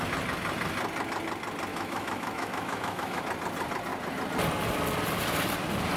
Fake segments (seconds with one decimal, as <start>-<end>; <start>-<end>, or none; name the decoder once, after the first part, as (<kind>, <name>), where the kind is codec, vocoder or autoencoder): 1.7-3.2 (autoencoder, DAC-VAE)